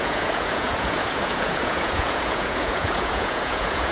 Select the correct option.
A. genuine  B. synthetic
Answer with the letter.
B